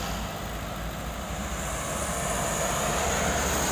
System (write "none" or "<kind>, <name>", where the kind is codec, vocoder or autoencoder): none